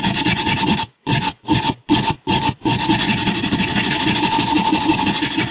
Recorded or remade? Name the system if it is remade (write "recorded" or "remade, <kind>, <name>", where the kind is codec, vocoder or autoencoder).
remade, vocoder, Vocos